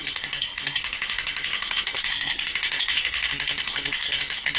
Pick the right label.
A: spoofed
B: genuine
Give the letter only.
A